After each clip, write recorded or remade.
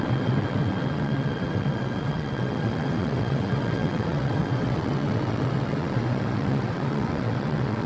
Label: remade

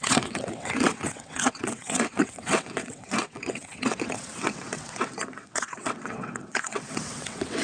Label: remade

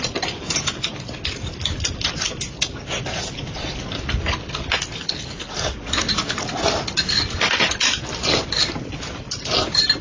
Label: recorded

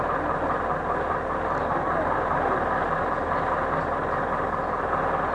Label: recorded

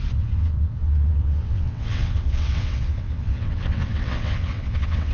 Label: remade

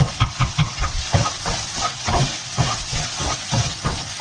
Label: remade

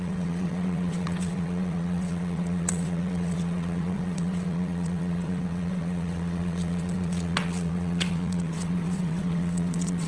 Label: remade